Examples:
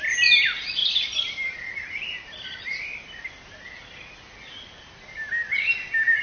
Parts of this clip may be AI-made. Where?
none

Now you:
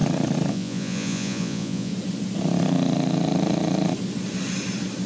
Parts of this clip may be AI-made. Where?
0.5-1.9 (vocoder, Vocos)

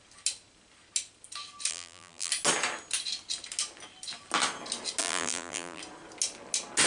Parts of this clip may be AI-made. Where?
1.7-2.3 (vocoder, BigVGAN v2); 5.0-5.8

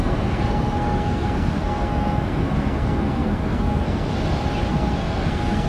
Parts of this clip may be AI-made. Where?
0.0-4.1 (codec, SNAC); 4.7-5.7

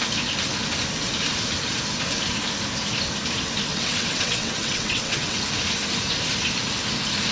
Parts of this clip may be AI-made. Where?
3.7-5.4 (vocoder, WaveNeXt)